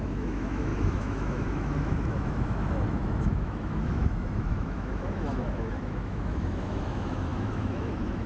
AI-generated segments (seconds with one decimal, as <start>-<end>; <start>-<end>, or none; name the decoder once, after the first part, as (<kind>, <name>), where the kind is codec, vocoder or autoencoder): 0.0-8.3 (autoencoder, DAC-VAE)

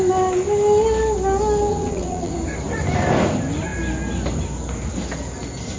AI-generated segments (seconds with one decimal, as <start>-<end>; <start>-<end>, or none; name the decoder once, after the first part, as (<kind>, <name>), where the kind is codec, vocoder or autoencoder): 1.7-2.3 (vocoder, WaveNeXt)

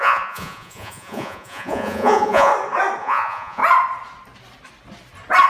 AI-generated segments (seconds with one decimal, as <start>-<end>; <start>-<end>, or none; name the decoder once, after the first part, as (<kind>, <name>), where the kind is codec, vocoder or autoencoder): 0.0-2.5 (vocoder, Vocos); 3.0-3.6

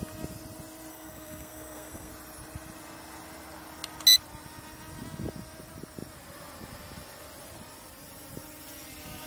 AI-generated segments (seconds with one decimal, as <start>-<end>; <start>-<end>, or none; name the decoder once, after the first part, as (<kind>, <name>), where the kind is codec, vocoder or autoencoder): 0.9-2.1 (codec, SNAC)

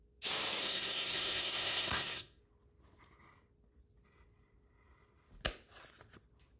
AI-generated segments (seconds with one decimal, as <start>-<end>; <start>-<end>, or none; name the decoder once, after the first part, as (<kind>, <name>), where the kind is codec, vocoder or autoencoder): 0.6-2.4 (codec, SNAC)

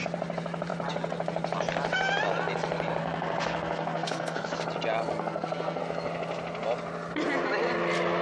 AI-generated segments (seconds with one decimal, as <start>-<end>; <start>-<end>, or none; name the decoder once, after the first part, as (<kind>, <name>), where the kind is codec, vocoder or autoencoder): 3.0-4.6 (codec, SNAC); 5.1-5.8